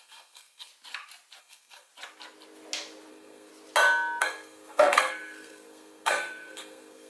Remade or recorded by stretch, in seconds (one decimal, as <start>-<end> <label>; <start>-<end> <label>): 0.0-0.7 remade; 0.7-1.4 recorded; 1.4-1.9 remade; 1.9-3.1 recorded; 3.1-3.5 remade; 3.5-4.2 recorded; 4.2-7.1 remade